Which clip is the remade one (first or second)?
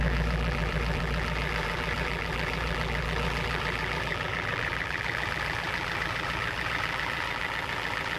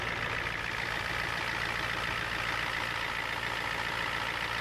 first